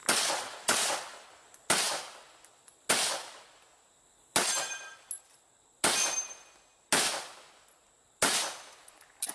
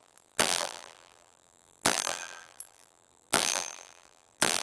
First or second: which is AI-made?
second